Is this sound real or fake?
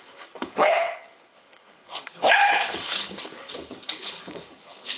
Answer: fake